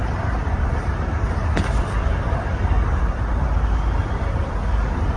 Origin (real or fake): real